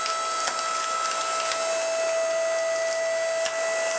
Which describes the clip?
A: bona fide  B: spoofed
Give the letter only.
A